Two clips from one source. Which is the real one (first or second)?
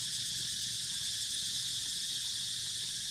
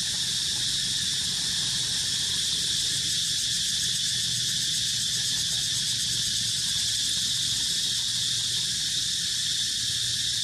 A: second